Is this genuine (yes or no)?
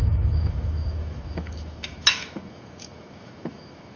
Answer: no